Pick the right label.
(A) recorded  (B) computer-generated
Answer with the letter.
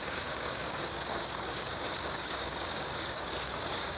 B